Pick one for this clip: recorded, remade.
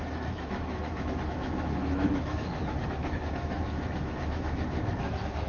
remade